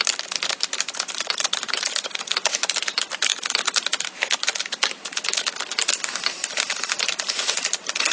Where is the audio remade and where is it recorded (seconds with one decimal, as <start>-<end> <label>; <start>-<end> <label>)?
0.0-8.1 recorded